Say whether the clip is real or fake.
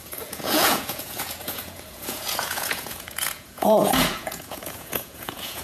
fake